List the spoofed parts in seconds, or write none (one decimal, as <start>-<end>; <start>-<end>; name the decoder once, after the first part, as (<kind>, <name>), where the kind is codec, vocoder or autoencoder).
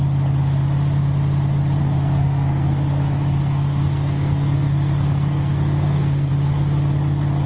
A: 1.8-6.3 (codec, SNAC)